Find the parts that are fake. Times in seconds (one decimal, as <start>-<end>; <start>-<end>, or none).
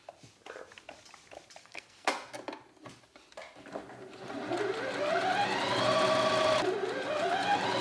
1.6-2.1